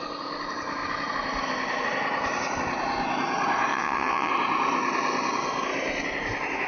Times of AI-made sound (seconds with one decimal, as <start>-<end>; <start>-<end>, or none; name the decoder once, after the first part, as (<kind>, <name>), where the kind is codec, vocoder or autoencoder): 3.7-4.3 (vocoder, WaveNeXt)